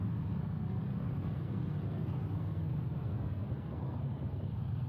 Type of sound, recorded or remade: remade